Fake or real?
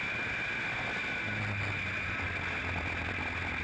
real